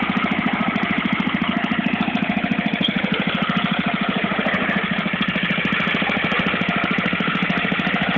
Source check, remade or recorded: recorded